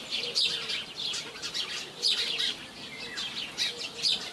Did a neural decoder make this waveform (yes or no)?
no